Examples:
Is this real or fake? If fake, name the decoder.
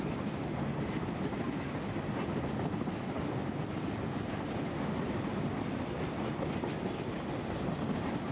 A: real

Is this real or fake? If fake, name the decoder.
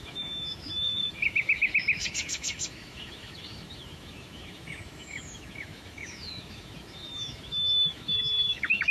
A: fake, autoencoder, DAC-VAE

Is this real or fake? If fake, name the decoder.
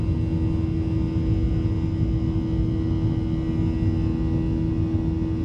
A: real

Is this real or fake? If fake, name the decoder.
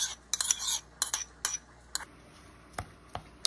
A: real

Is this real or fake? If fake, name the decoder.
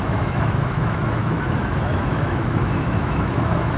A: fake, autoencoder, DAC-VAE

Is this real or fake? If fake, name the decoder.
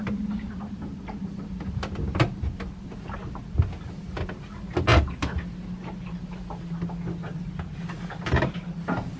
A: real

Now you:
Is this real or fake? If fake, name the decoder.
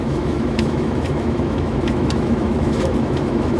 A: fake, autoencoder, DAC-VAE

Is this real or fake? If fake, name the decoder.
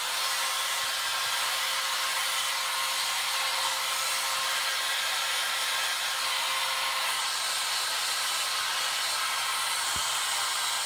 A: real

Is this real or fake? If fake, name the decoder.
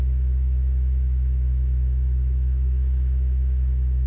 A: fake, autoencoder, DAC-VAE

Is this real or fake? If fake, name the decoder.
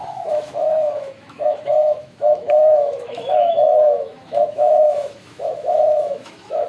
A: fake, autoencoder, DAC-VAE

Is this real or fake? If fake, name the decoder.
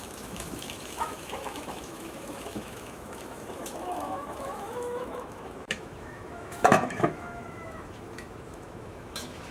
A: fake, autoencoder, DAC-VAE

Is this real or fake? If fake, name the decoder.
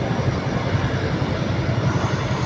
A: real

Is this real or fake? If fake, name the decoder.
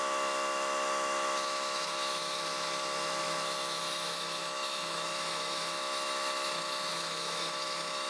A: fake, autoencoder, DAC-VAE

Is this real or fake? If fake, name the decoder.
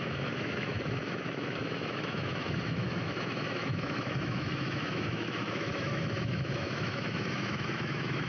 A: fake, autoencoder, DAC-VAE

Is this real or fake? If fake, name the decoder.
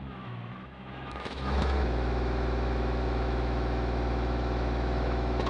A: fake, autoencoder, DAC-VAE